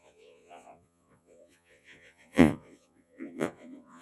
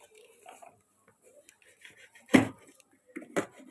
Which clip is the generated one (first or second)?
first